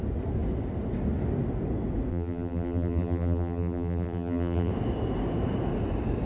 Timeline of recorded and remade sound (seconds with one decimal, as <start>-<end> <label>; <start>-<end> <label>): 0.0-2.1 recorded; 2.1-4.7 remade; 4.7-6.3 recorded